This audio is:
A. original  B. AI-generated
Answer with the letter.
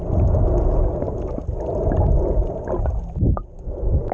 A